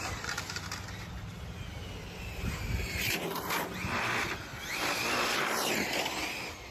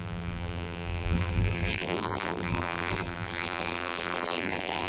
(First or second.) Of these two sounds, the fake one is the second